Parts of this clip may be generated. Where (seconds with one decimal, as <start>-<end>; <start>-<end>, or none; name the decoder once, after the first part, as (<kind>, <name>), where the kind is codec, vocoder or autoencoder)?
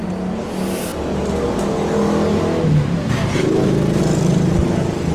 none